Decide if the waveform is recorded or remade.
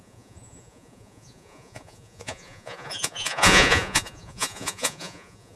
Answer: remade